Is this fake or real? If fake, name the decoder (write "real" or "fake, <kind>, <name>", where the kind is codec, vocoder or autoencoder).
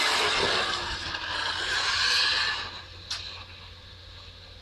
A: real